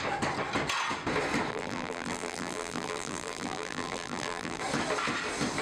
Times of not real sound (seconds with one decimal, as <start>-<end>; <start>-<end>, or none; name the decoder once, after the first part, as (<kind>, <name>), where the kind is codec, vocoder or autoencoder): 1.5-4.6 (vocoder, BigVGAN v2)